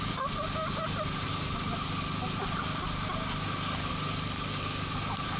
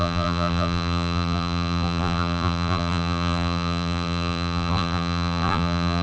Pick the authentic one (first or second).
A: first